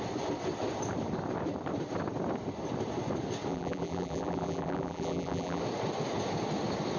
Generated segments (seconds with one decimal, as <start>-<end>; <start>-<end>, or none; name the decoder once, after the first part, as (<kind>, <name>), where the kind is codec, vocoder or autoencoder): 3.5-5.6 (vocoder, BigVGAN v2)